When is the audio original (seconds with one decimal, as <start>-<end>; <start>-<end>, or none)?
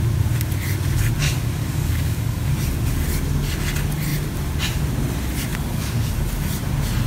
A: 0.0-1.2; 2.5-5.5; 6.1-7.1